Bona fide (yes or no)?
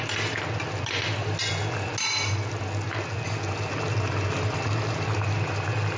yes